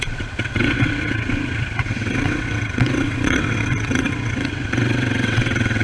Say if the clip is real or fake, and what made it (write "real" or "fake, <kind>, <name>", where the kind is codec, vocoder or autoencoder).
fake, vocoder, WaveNeXt